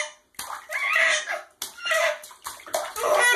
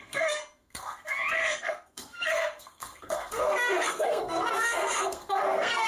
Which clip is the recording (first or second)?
first